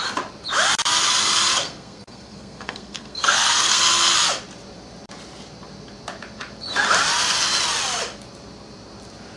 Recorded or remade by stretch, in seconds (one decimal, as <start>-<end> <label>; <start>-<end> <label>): 0.0-1.5 recorded; 1.5-3.8 remade; 3.8-9.4 recorded